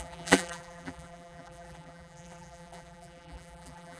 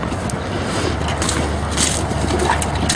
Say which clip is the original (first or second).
second